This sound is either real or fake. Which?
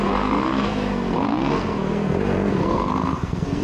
fake